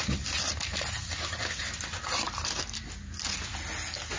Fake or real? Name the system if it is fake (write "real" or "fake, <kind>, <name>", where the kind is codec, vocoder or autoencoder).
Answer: real